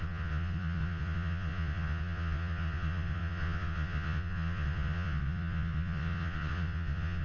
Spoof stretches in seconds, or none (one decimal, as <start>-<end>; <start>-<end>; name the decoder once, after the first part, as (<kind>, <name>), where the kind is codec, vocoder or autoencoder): 0.0-7.2 (vocoder, Vocos)